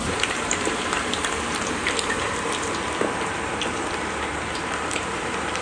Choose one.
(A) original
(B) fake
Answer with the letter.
B